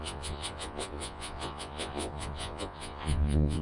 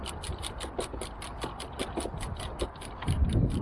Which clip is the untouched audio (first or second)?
second